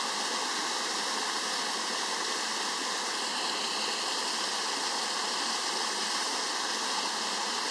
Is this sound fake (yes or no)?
no